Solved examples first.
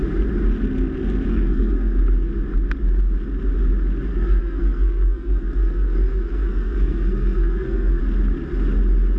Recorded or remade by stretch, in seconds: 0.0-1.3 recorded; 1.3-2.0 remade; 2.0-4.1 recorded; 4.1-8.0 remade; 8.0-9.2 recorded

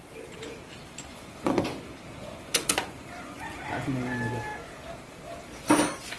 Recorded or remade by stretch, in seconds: 0.0-1.1 recorded; 1.1-1.6 remade; 1.6-2.2 recorded; 2.2-3.6 remade; 3.6-6.2 recorded

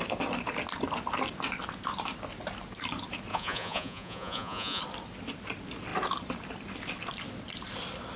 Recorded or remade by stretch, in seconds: 0.0-3.3 recorded; 3.3-4.8 remade; 4.8-8.2 recorded

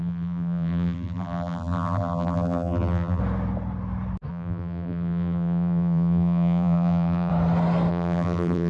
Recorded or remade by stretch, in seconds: 0.0-3.2 remade; 3.2-4.3 recorded; 4.3-7.3 remade; 7.3-7.9 recorded; 7.9-8.7 remade

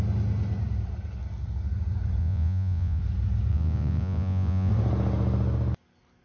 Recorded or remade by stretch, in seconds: 0.0-2.2 recorded; 2.2-3.0 remade; 3.0-3.5 recorded; 3.5-4.7 remade; 4.7-6.2 recorded

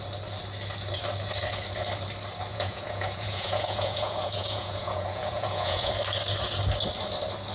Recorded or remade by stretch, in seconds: 0.0-2.5 recorded; 2.5-5.9 remade; 5.9-7.5 recorded